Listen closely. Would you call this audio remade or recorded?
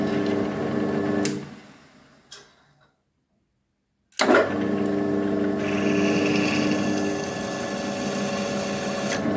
recorded